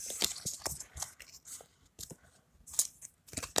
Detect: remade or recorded recorded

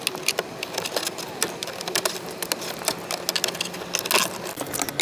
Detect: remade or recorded recorded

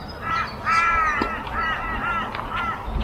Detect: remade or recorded recorded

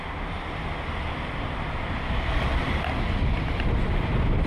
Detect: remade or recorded recorded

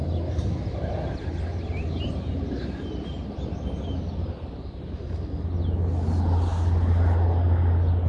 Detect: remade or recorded recorded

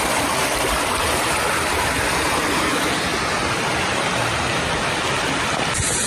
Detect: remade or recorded recorded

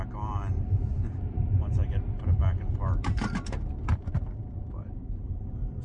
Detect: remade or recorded remade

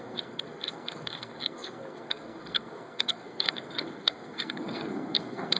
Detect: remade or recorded remade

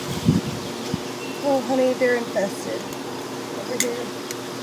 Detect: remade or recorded recorded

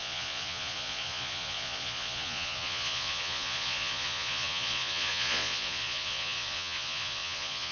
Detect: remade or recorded remade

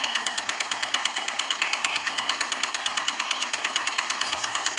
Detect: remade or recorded remade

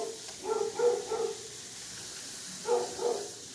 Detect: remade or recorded recorded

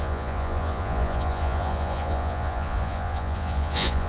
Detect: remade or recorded remade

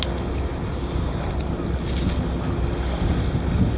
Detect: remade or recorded recorded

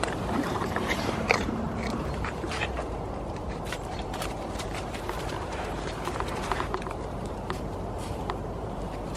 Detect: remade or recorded remade